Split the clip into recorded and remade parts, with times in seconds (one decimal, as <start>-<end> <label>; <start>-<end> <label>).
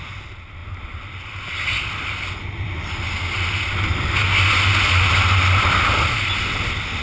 0.0-7.0 recorded